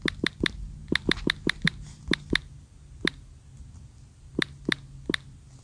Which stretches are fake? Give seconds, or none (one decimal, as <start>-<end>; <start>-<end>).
none

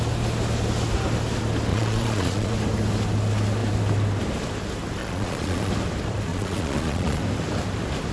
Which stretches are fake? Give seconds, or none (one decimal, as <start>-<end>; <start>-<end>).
1.7-2.5; 5.0-5.7; 6.3-7.2

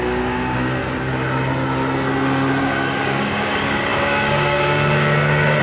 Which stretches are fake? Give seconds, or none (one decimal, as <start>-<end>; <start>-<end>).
0.0-0.8; 2.6-5.6